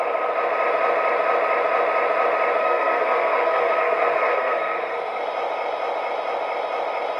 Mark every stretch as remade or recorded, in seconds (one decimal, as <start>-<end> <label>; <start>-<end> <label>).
0.0-2.6 recorded; 2.6-5.2 remade; 5.2-7.2 recorded